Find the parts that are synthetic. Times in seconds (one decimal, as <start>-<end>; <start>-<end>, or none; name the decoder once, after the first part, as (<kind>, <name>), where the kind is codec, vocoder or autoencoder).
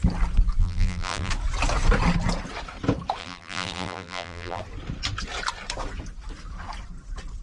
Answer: 0.6-1.3 (vocoder, BigVGAN v2); 3.2-4.6